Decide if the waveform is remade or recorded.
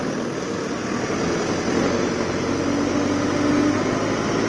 recorded